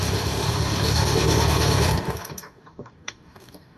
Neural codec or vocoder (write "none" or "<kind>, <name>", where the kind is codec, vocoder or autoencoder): codec, DAC